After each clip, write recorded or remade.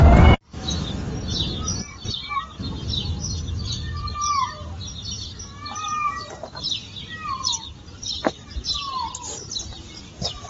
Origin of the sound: recorded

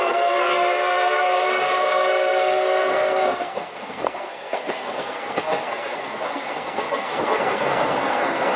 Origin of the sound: remade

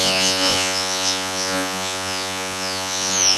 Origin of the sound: remade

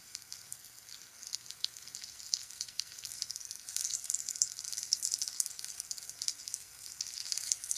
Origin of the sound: remade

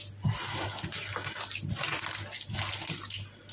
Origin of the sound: recorded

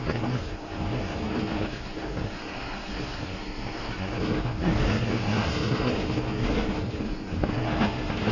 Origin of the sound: remade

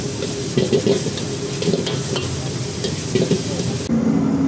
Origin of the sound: recorded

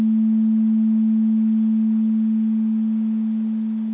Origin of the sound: recorded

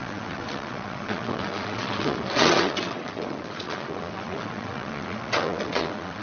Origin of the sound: remade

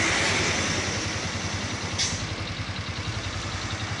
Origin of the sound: recorded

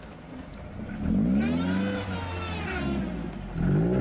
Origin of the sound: recorded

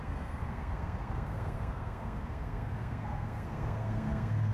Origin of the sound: remade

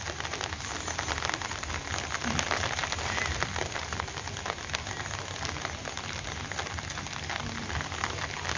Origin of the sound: recorded